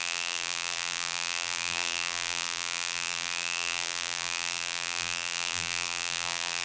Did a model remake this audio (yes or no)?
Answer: yes